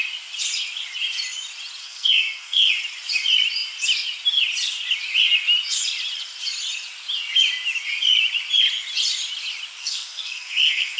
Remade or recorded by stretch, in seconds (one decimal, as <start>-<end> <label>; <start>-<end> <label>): 0.0-1.8 recorded; 1.8-2.7 remade; 2.7-9.8 recorded; 9.8-11.0 remade